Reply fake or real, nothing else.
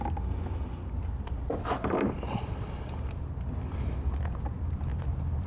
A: real